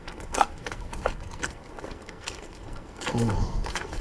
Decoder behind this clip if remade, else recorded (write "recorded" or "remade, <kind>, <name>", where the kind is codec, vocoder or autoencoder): remade, codec, SNAC